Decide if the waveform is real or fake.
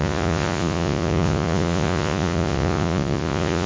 fake